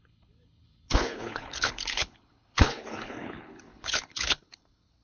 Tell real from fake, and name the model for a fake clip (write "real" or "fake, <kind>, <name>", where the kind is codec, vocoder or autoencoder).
fake, codec, HILCodec